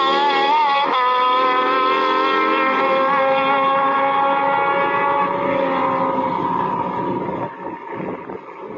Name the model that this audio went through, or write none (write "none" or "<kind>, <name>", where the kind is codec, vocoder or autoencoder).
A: none